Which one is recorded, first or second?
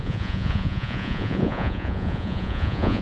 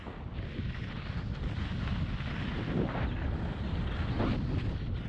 second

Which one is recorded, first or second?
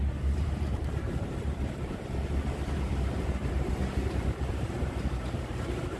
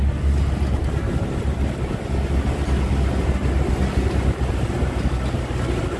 second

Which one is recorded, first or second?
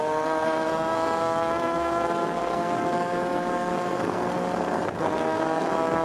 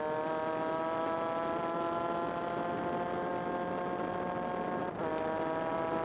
second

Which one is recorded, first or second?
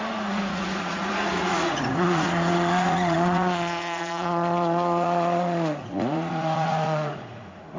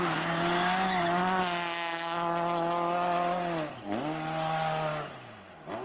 second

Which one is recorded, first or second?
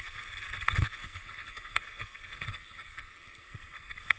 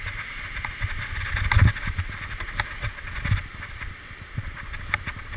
second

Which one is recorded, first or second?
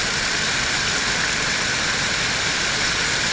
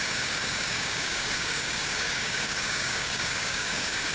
first